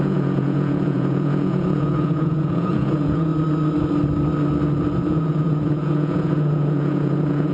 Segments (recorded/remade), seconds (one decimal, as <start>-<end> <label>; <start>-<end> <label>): 0.0-3.3 remade; 3.3-5.0 recorded; 5.0-7.5 remade